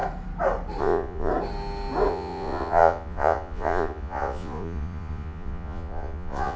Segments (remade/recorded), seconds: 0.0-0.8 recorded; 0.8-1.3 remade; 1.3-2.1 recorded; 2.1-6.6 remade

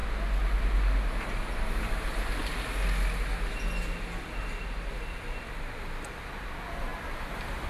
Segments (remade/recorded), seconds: 0.0-7.7 recorded

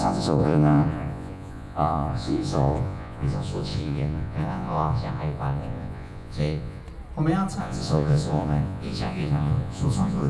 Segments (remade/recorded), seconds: 0.0-6.8 remade; 6.8-7.6 recorded; 7.6-10.3 remade

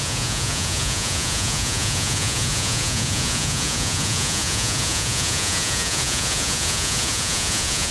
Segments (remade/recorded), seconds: 0.0-7.9 remade

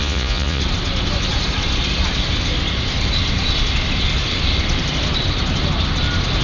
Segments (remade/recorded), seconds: 0.0-0.6 remade; 0.6-6.4 recorded

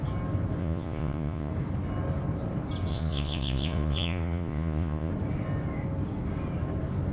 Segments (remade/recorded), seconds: 0.0-0.6 recorded; 0.6-1.5 remade; 1.5-2.9 recorded; 2.9-5.1 remade; 5.1-7.1 recorded